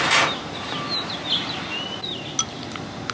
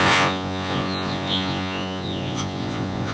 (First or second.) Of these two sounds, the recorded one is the first